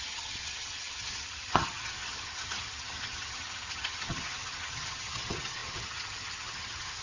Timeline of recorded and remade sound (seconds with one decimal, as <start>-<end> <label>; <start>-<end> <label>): 0.0-7.0 remade